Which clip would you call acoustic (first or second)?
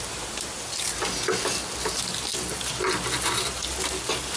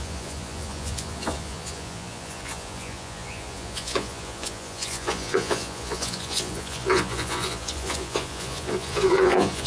first